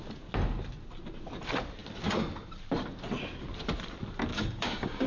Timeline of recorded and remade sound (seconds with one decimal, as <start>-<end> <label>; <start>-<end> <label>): 0.0-4.3 recorded; 4.3-5.1 remade